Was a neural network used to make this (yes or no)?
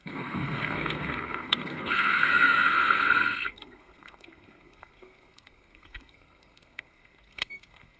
yes